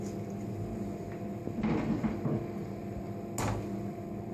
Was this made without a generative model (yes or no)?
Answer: yes